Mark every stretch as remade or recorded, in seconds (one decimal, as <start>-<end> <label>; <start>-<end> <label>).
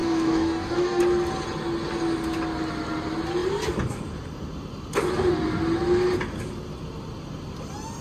0.0-1.0 remade; 1.0-8.0 recorded